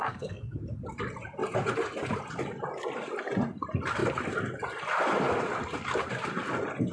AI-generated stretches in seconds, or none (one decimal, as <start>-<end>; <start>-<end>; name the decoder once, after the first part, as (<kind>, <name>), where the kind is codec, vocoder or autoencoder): 0.0-0.6 (codec, SNAC)